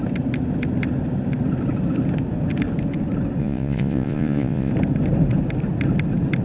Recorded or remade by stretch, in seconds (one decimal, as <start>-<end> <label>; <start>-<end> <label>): 0.0-3.4 recorded; 3.4-4.7 remade; 4.7-6.4 recorded